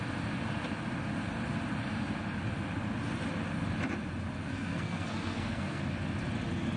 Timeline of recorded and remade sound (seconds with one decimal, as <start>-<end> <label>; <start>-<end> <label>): 0.0-4.4 recorded; 4.4-5.8 remade; 5.8-6.8 recorded